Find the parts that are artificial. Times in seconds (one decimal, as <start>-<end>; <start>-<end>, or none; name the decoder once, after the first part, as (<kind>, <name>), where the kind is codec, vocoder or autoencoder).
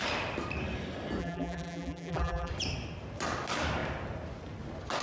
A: 1.2-2.5 (vocoder, BigVGAN v2)